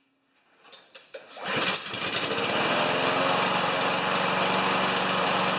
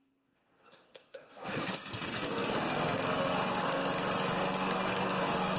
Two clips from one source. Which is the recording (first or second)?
first